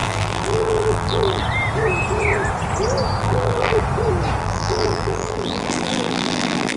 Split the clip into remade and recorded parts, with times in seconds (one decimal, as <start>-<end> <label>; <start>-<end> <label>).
0.0-1.4 remade; 1.4-3.2 recorded; 3.2-3.8 remade; 3.8-4.4 recorded; 4.4-6.8 remade